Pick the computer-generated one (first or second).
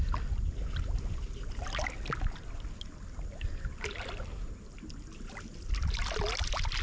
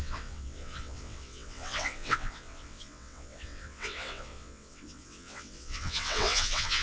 second